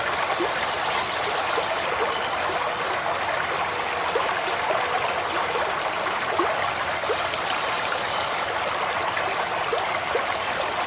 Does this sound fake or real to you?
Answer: real